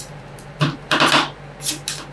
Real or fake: real